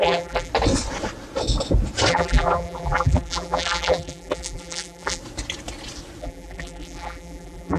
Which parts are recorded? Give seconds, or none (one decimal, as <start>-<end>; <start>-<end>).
0.5-2.1; 5.2-6.2